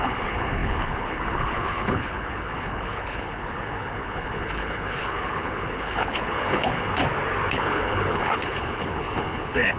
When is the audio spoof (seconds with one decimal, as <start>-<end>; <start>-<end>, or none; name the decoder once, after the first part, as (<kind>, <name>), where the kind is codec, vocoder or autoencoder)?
0.0-7.0 (codec, HILCodec); 7.5-9.8